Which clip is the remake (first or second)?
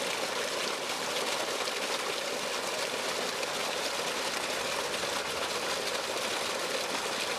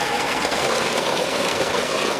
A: second